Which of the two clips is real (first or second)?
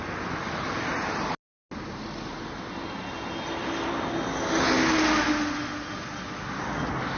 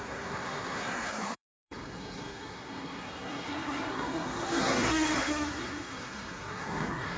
first